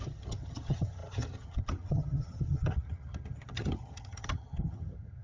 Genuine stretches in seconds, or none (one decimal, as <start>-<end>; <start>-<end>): none